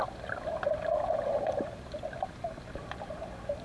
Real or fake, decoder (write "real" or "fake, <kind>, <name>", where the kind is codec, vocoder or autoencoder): fake, vocoder, BigVGAN v2